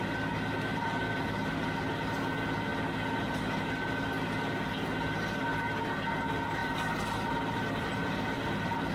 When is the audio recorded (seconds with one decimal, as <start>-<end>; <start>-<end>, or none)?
0.0-0.7; 1.5-6.6